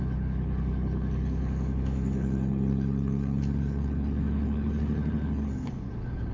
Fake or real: fake